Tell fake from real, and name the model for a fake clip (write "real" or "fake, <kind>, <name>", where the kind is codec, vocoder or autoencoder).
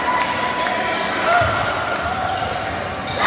real